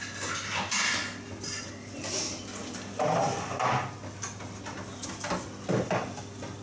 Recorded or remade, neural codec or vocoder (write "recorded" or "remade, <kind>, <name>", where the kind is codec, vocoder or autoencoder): recorded